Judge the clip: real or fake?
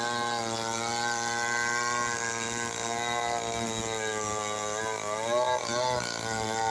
real